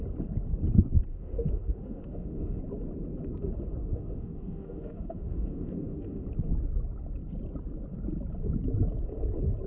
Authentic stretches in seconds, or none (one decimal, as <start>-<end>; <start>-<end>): 0.0-1.1; 2.6-3.8; 6.2-9.7